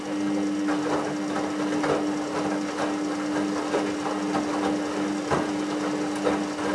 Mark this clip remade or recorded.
recorded